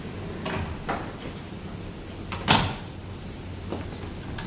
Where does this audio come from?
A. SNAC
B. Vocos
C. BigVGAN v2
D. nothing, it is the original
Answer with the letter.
D